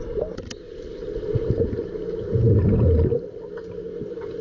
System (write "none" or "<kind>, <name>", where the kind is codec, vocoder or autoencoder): none